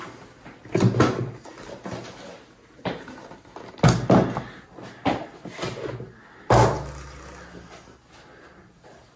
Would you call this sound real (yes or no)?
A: yes